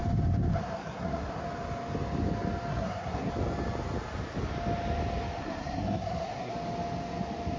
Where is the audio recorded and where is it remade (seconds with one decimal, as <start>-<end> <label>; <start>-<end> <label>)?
0.0-0.5 recorded; 0.5-1.4 remade; 1.4-2.7 recorded; 2.7-3.3 remade; 3.3-5.4 recorded; 5.4-6.5 remade; 6.5-7.6 recorded